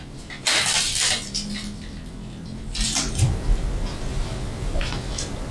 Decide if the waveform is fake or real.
real